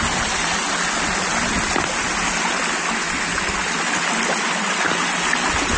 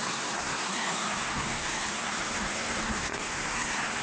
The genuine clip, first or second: first